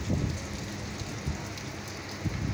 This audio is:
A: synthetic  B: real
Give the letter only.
B